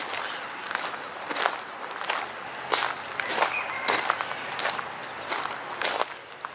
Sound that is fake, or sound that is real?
real